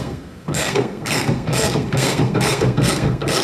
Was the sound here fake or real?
fake